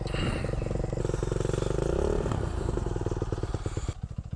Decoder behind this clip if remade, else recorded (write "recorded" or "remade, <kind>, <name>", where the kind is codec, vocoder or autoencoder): recorded